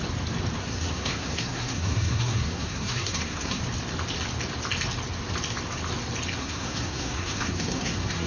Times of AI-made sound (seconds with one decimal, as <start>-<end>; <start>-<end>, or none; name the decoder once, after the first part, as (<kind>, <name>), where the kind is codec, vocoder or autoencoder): 0.6-3.6 (codec, SNAC); 6.4-8.3